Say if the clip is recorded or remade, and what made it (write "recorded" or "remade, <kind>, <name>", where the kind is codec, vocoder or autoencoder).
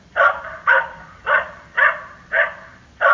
remade, vocoder, BigVGAN v2